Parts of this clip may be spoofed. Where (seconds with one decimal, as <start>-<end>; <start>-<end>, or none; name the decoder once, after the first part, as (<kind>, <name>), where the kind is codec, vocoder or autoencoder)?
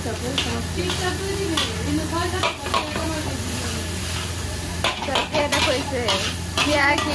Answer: none